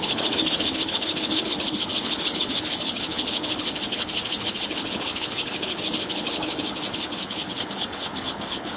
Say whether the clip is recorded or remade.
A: remade